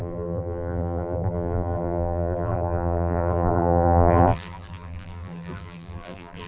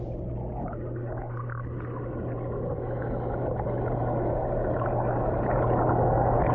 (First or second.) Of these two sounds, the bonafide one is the second